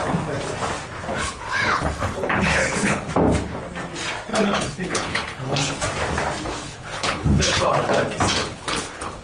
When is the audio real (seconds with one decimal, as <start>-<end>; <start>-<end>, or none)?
0.0-1.1; 3.1-4.3; 5.8-6.6; 7.9-8.4